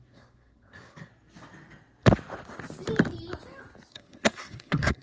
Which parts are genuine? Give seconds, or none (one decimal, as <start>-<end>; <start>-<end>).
1.1-3.9